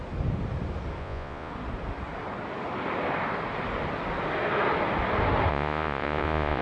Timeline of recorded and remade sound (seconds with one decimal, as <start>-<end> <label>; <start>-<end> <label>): 0.0-1.0 recorded; 1.0-1.5 remade; 1.5-5.5 recorded; 5.5-6.6 remade